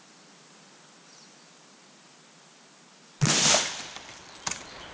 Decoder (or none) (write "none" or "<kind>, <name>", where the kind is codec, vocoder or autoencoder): none